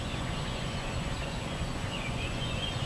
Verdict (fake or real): fake